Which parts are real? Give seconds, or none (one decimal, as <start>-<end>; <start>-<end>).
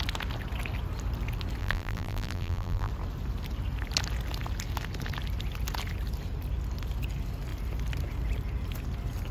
0.0-1.6; 2.9-9.3